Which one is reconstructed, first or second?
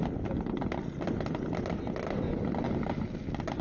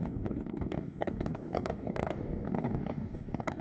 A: second